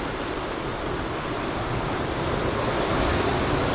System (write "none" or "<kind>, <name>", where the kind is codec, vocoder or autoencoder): none